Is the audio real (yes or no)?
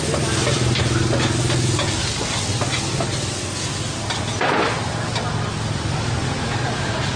yes